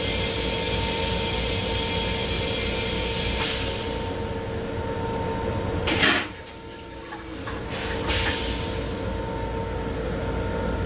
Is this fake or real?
real